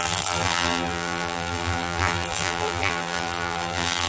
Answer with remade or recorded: remade